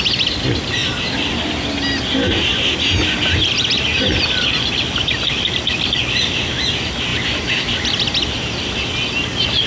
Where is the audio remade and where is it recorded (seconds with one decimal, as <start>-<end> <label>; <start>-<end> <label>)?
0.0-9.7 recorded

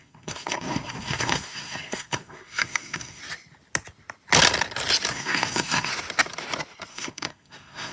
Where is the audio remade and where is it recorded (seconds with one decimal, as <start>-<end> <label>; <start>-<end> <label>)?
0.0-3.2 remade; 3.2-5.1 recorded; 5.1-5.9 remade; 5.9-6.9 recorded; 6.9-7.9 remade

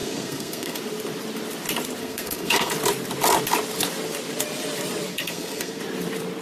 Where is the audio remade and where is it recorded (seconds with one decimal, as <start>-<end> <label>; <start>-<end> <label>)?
0.0-0.8 remade; 0.8-2.0 recorded; 2.0-2.7 remade; 2.7-5.1 recorded; 5.1-5.8 remade; 5.8-6.4 recorded

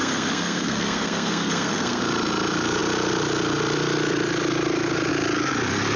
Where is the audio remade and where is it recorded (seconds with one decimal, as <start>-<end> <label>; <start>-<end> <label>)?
0.0-2.0 remade; 2.0-6.0 recorded

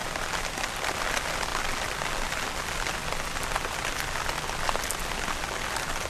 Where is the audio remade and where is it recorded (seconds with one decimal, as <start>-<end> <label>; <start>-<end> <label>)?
0.0-6.1 recorded

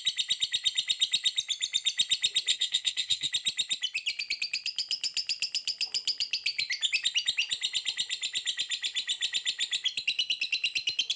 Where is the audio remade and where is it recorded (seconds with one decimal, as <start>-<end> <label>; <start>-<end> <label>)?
0.0-2.5 recorded; 2.5-3.3 remade; 3.3-11.2 recorded

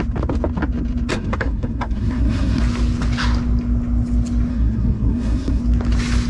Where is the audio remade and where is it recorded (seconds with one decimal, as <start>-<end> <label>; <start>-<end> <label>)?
0.0-1.1 recorded; 1.1-2.6 remade; 2.6-4.5 recorded; 4.5-5.6 remade; 5.6-6.3 recorded